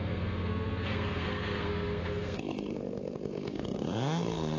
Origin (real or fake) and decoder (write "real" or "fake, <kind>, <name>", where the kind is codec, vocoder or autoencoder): fake, codec, SNAC